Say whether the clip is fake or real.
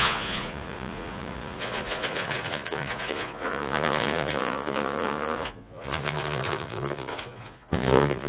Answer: fake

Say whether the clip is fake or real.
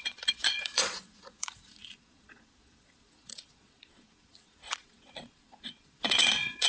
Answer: fake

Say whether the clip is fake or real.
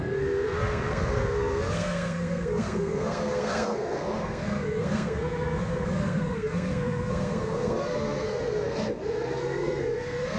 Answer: fake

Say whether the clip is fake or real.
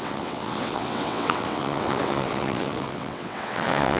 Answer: fake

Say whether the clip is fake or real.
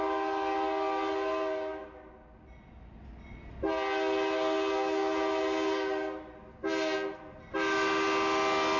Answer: real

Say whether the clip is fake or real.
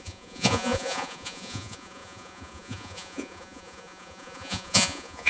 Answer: fake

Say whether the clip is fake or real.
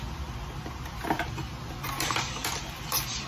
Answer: real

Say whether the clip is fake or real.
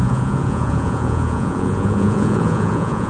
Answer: fake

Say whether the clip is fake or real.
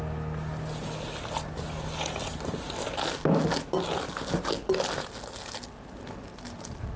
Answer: real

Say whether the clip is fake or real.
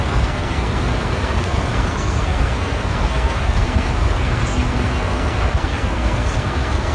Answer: fake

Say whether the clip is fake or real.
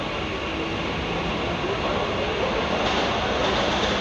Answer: real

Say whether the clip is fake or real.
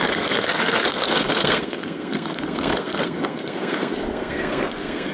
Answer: fake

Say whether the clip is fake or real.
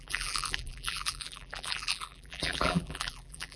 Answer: fake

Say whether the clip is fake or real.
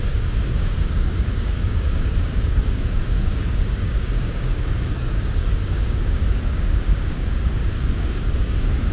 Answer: fake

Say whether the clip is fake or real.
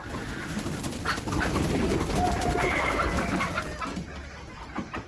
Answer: real